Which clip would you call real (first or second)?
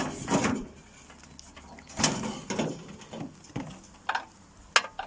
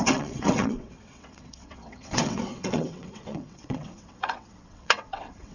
first